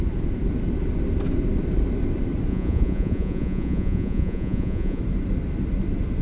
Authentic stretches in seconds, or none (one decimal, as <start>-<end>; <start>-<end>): 0.0-2.5; 5.0-6.2